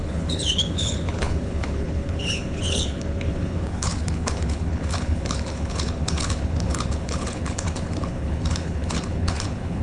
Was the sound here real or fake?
fake